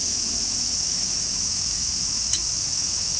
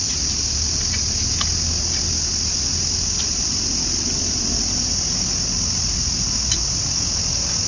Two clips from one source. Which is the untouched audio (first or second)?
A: second